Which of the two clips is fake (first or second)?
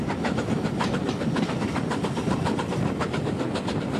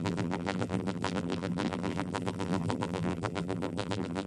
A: second